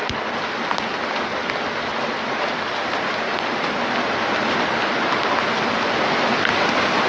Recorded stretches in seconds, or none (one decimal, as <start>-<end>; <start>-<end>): 0.0-7.1